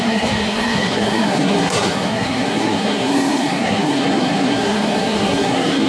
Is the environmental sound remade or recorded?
remade